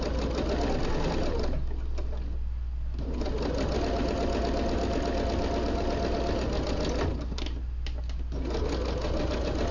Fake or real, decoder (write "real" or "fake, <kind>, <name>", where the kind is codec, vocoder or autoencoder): real